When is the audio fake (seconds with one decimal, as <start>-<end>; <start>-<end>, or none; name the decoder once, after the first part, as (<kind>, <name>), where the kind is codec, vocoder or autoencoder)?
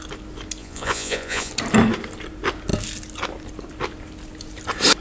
0.6-1.5 (vocoder, Vocos)